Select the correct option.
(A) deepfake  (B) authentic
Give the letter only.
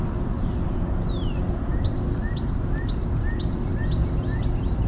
B